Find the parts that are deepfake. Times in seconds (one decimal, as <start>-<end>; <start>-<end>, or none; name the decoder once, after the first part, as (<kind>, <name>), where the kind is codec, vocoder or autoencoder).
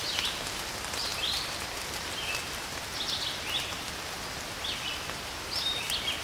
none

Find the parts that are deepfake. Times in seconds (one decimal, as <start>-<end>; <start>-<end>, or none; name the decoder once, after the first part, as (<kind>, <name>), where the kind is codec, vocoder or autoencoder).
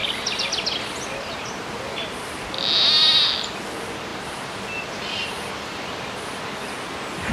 4.1-6.3 (vocoder, BigVGAN v2)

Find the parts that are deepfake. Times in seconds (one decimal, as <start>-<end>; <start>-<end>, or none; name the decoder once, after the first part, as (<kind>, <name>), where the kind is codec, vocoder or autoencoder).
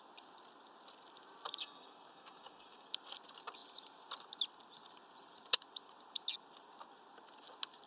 1.6-2.9 (codec, DAC)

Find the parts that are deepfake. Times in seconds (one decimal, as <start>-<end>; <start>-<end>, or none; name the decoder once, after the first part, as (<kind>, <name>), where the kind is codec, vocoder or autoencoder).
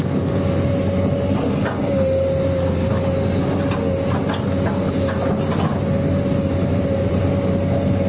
6.7-7.2 (vocoder, BigVGAN v2)